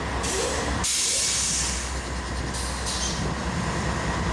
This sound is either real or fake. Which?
real